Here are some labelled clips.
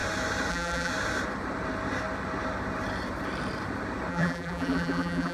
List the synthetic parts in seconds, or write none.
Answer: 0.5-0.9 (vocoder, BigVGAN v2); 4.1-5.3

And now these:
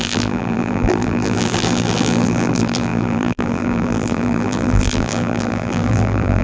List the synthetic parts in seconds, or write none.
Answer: 0.0-6.4 (vocoder, BigVGAN v2)

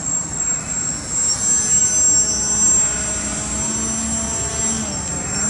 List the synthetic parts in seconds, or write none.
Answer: 0.0-0.9 (vocoder, BigVGAN v2)

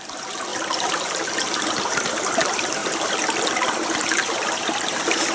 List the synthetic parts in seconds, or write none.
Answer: none

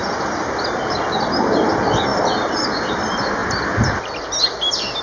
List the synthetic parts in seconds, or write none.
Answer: 2.1-2.9 (vocoder, BigVGAN v2)

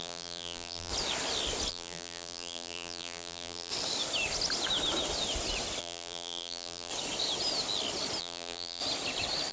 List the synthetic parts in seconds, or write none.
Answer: 0.0-0.9 (vocoder, BigVGAN v2); 1.7-3.7; 5.8-6.9; 8.2-8.8